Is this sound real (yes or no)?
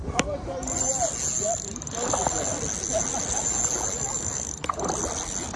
yes